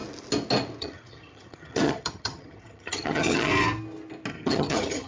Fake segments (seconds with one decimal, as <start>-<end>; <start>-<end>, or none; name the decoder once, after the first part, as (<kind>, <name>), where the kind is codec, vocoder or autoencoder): 0.8-3.5 (vocoder, HiFi-GAN); 4.3-5.1